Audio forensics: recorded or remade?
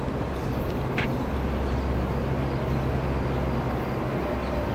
recorded